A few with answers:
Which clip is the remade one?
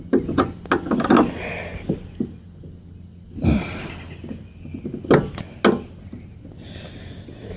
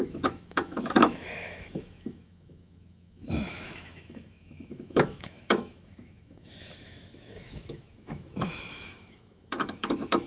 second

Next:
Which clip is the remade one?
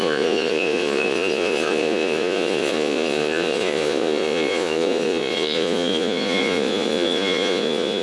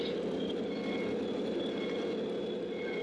first